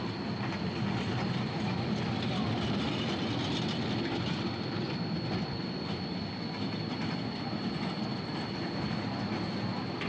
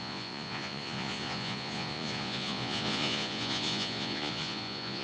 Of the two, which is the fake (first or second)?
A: second